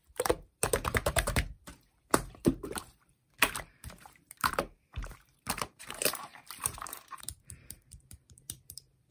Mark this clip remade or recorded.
remade